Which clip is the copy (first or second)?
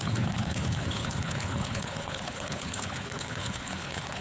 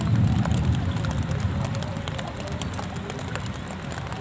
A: first